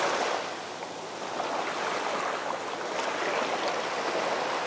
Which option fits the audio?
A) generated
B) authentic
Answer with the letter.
B